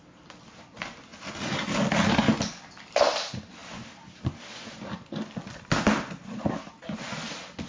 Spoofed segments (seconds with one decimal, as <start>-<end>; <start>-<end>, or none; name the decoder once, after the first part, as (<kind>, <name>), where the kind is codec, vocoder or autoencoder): 3.6-4.5 (vocoder, BigVGAN v2)

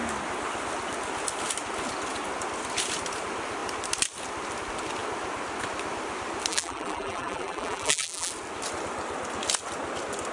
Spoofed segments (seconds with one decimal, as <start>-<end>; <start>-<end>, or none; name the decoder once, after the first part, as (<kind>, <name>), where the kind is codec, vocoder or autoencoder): 6.5-8.3 (vocoder, BigVGAN v2)

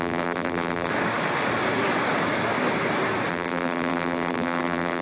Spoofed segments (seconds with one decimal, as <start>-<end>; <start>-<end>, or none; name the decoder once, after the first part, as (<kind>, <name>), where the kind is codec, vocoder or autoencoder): 0.0-0.9 (vocoder, BigVGAN v2); 3.3-5.0

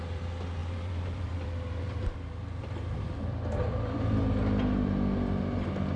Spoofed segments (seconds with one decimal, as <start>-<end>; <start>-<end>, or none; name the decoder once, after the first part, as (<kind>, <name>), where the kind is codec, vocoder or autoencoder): 0.6-4.2 (vocoder, BigVGAN v2)